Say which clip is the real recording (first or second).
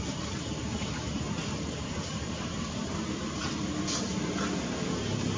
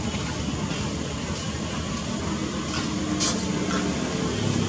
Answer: second